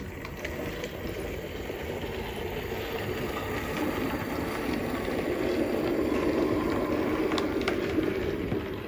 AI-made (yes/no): no